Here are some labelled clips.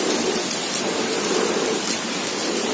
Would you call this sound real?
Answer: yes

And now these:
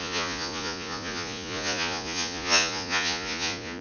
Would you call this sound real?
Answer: no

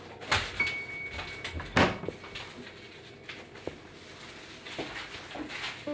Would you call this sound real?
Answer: yes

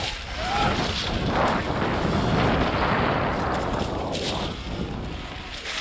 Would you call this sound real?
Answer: yes